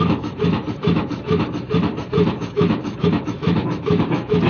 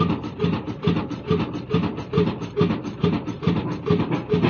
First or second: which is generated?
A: first